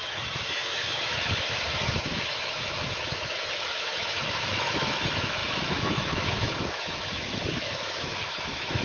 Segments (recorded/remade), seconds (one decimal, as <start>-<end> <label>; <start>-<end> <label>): 0.0-8.8 remade